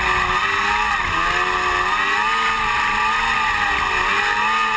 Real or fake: real